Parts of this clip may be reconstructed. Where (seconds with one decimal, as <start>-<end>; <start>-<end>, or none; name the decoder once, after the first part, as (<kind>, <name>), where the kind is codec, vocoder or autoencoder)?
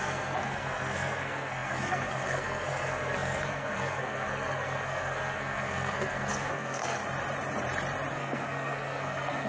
0.0-7.0 (codec, SNAC); 8.1-9.5